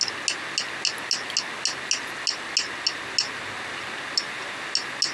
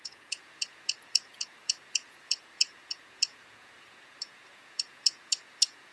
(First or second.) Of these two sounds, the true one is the first